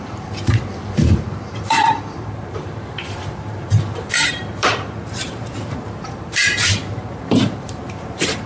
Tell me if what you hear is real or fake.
fake